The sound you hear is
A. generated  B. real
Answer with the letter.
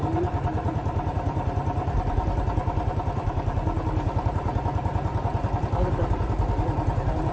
A